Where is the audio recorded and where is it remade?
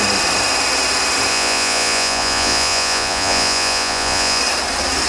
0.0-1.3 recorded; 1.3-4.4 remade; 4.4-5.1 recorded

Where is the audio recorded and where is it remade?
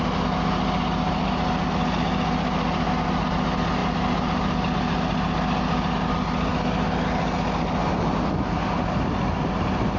0.0-10.0 recorded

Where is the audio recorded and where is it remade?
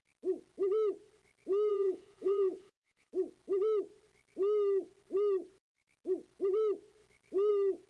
0.0-1.7 recorded; 1.7-3.1 remade; 3.1-7.9 recorded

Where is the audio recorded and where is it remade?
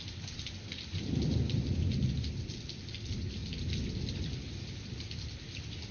0.0-5.9 recorded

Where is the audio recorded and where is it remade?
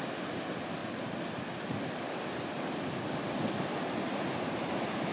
0.0-5.1 recorded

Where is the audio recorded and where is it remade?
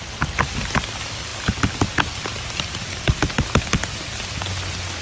0.0-5.0 recorded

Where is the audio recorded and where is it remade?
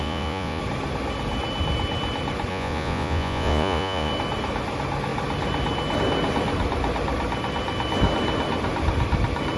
0.0-0.6 remade; 0.6-2.5 recorded; 2.5-4.1 remade; 4.1-9.6 recorded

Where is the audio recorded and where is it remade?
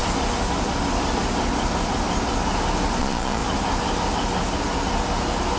0.0-3.0 recorded; 3.0-3.4 remade; 3.4-5.6 recorded